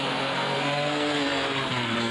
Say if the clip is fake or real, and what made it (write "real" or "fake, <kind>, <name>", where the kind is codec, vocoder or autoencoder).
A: fake, codec, SNAC